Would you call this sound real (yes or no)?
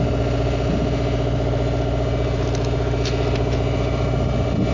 yes